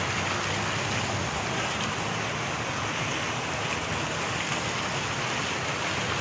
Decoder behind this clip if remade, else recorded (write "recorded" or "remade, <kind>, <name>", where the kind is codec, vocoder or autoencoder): recorded